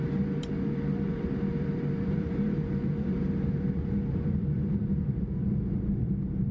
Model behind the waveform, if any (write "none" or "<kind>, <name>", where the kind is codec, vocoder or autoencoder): vocoder, BigVGAN v2